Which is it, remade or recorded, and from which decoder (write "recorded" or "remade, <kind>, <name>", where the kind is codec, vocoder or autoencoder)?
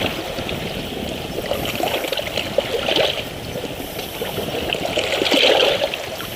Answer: recorded